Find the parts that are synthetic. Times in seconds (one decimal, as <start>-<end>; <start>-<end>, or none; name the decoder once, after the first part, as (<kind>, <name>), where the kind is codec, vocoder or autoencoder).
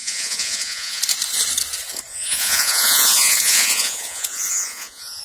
0.0-1.0 (vocoder, Vocos); 2.1-5.2